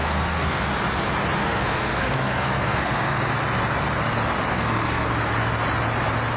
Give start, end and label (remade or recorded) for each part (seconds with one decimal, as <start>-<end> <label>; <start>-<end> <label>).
0.0-0.6 remade; 0.6-1.4 recorded; 1.4-3.2 remade; 3.2-4.5 recorded; 4.5-5.1 remade; 5.1-6.4 recorded